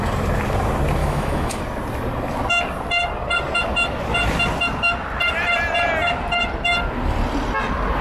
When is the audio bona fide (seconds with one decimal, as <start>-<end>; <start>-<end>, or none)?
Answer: 0.0-1.0; 1.6-8.0

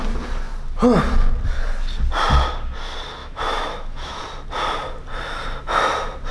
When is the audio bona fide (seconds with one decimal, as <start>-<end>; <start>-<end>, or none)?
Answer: 0.0-3.2; 4.2-6.3